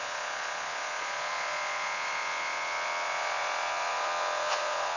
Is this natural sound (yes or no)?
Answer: no